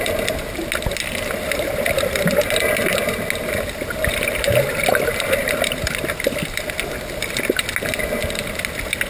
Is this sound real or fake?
real